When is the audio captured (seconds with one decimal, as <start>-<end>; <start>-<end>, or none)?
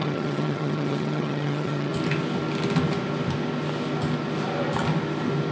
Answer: 1.9-5.5